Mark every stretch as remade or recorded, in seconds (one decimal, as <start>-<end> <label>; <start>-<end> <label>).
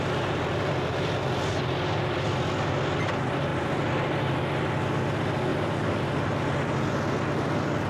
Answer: 0.0-5.5 recorded; 5.5-6.0 remade; 6.0-7.9 recorded